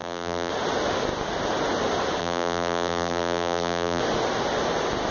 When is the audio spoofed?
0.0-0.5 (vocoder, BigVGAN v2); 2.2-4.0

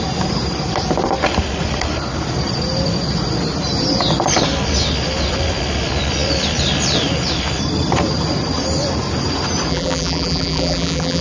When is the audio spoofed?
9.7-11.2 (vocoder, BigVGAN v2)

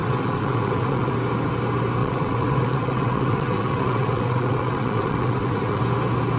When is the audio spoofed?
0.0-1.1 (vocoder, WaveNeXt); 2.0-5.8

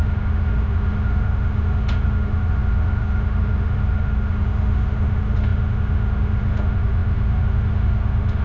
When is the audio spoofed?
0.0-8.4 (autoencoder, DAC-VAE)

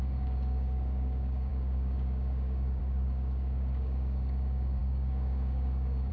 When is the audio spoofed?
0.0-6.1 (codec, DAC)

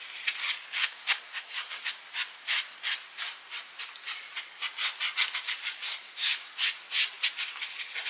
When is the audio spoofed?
0.8-1.9 (codec, SNAC); 5.9-6.5

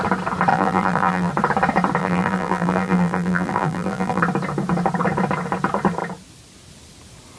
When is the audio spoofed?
0.5-1.3 (vocoder, BigVGAN v2); 2.0-4.2